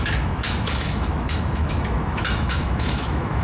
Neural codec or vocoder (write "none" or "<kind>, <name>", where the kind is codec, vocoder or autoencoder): autoencoder, DAC-VAE